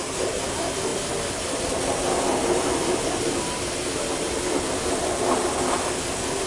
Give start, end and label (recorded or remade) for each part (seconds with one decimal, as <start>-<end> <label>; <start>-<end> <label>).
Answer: 0.0-6.5 recorded